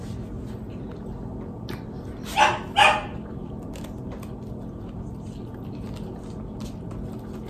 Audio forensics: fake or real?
real